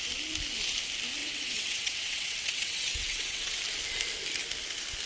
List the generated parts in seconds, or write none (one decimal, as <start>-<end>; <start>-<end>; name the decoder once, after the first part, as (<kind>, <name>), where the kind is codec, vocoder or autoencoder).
1.2-3.5 (vocoder, WaveNeXt)